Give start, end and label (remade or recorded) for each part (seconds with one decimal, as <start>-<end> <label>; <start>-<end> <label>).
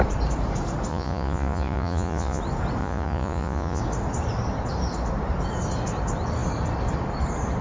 0.0-0.9 recorded; 0.9-2.4 remade; 2.4-2.8 recorded; 2.8-3.8 remade; 3.8-7.6 recorded